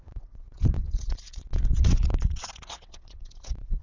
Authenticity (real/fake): fake